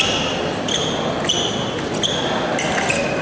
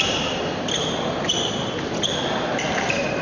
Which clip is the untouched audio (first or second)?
first